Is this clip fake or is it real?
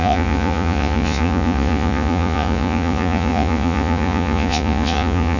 fake